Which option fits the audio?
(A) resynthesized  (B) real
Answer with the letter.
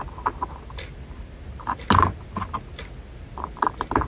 B